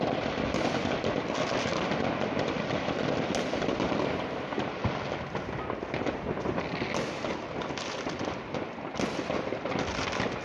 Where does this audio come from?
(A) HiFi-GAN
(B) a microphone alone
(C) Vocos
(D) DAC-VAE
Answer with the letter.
B